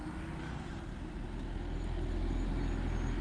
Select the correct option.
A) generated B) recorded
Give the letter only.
B